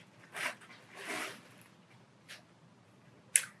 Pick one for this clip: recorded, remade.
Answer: recorded